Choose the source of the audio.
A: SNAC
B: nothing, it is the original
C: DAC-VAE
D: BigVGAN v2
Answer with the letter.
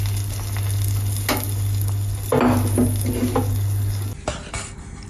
B